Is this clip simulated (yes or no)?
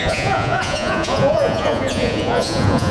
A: yes